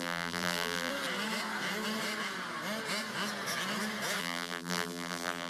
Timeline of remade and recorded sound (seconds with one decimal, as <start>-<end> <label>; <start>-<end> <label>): 0.0-0.9 remade; 0.9-4.2 recorded; 4.2-5.5 remade